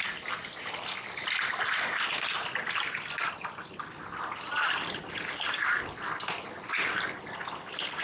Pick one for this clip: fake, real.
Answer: real